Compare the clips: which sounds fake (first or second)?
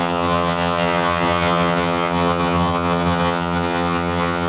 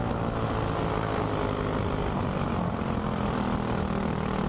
first